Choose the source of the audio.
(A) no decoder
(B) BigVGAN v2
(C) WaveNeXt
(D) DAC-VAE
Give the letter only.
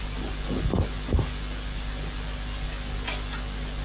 A